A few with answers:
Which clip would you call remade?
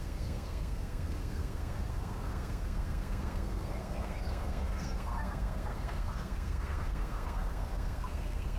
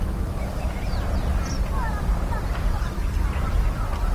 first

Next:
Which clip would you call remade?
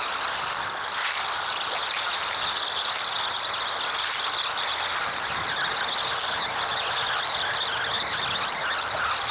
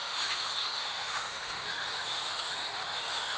second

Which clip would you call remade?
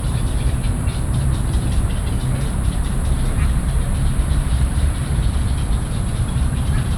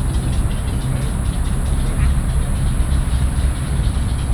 first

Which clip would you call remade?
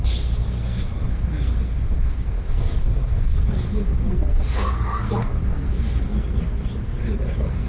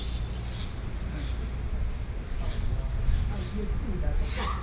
first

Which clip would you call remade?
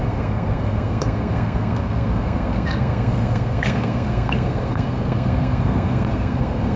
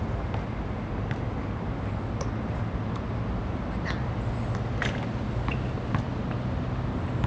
first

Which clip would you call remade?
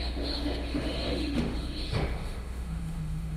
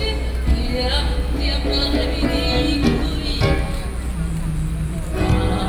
first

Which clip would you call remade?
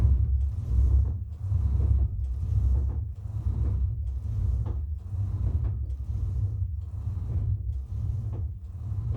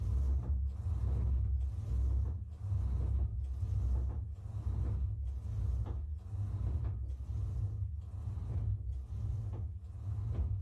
first